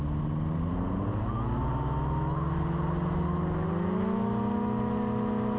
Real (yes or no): yes